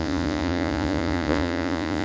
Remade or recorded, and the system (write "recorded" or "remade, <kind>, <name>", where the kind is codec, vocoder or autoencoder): remade, vocoder, Vocos